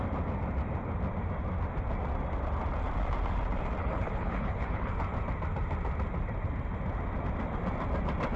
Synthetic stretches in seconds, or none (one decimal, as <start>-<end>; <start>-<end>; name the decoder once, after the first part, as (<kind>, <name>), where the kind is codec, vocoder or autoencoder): 3.8-4.9 (codec, HILCodec)